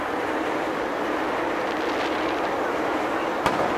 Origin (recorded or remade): recorded